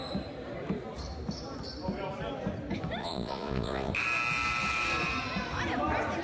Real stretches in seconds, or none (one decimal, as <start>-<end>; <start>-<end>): 0.0-3.0; 3.9-6.2